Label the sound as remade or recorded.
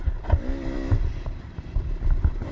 remade